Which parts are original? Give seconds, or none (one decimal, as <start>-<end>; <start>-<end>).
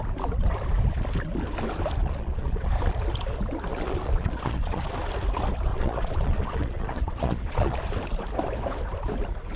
0.0-2.0; 2.7-3.7; 4.9-5.7; 7.8-9.6